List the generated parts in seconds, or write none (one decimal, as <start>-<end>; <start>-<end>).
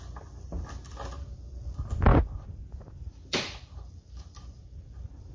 2.1-5.3